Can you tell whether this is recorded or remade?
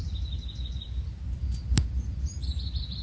recorded